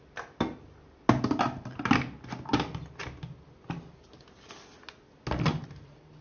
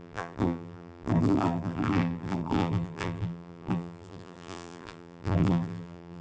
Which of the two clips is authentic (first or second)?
first